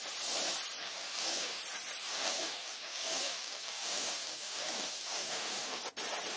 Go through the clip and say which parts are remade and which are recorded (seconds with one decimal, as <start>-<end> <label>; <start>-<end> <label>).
0.0-0.8 recorded; 0.8-1.6 remade; 1.6-2.0 recorded; 2.0-5.8 remade; 5.8-6.4 recorded